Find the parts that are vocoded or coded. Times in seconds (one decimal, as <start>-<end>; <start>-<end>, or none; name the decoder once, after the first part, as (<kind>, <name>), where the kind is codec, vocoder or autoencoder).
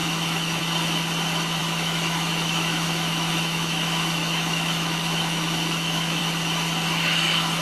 0.0-0.6 (autoencoder, DAC-VAE); 1.6-6.2